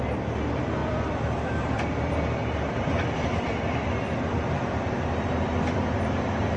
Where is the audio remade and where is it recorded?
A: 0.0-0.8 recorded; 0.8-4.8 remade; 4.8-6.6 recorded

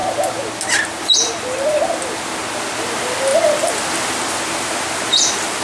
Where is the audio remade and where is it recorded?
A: 0.0-5.6 recorded